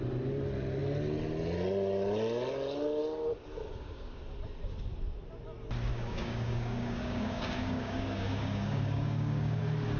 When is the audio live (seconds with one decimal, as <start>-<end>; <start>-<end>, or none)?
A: 0.0-3.7; 4.2-5.9; 9.6-10.0